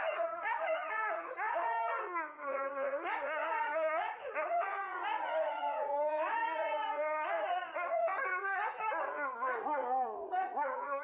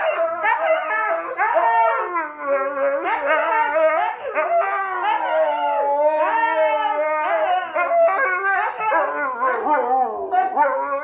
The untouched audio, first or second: second